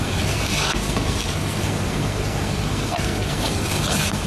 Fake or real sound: fake